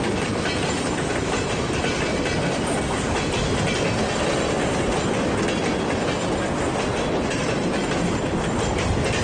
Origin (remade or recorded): recorded